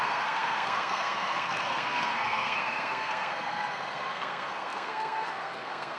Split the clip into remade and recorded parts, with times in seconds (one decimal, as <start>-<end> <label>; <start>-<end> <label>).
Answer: 0.0-6.0 remade

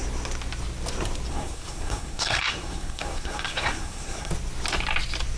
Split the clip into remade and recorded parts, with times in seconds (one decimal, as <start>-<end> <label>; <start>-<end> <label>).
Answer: 0.0-1.3 recorded; 1.3-4.3 remade; 4.3-5.4 recorded

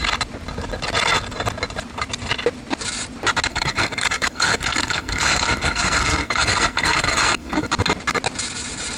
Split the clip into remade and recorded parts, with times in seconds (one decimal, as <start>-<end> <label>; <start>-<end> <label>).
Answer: 0.0-3.5 recorded; 3.5-7.7 remade; 7.7-9.0 recorded

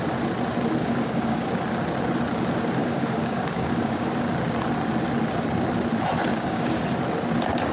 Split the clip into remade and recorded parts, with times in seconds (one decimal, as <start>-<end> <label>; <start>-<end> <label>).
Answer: 0.0-0.8 recorded; 0.8-1.5 remade; 1.5-2.8 recorded; 2.8-4.1 remade; 4.1-6.3 recorded; 6.3-6.8 remade; 6.8-7.7 recorded

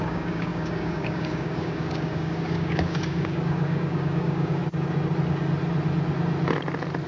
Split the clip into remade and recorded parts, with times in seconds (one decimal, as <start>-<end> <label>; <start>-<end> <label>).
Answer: 0.0-4.6 remade; 4.6-7.1 recorded

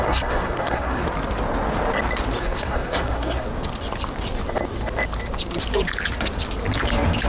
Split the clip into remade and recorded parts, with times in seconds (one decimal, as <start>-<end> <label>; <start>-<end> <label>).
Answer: 0.0-1.0 remade; 1.0-2.4 recorded; 2.4-3.5 remade; 3.5-7.3 recorded

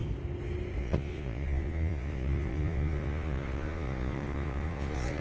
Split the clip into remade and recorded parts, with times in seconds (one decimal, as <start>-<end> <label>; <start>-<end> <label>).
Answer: 0.0-0.8 recorded; 0.8-5.2 remade